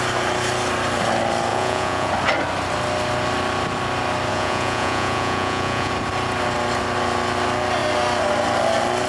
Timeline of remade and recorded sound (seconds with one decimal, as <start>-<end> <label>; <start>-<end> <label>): 0.0-1.5 recorded; 1.5-2.1 remade; 2.1-4.3 recorded; 4.3-5.9 remade; 5.9-9.1 recorded